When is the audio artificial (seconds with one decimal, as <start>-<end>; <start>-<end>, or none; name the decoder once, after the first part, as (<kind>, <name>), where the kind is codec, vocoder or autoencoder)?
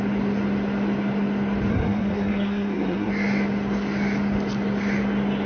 1.7-3.1 (codec, SNAC)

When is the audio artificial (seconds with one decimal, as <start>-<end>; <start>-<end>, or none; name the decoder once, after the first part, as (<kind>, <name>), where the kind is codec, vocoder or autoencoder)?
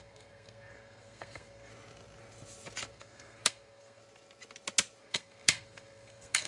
0.0-1.7 (codec, SNAC); 2.9-4.0; 5.0-6.5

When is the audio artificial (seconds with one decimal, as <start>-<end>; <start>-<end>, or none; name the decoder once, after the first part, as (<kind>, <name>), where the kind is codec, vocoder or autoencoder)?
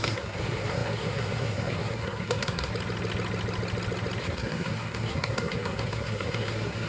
0.0-2.7 (codec, SNAC); 4.2-6.9